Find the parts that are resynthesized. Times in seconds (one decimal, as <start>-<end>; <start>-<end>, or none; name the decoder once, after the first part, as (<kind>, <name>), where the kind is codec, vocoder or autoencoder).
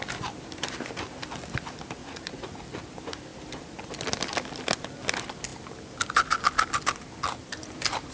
2.0-2.6 (vocoder, Vocos)